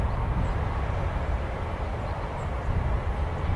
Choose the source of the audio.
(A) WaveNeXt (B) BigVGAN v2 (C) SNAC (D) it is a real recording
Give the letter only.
D